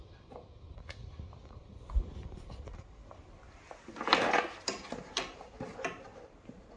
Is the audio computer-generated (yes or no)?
no